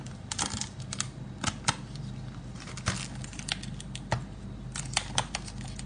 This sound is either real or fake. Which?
real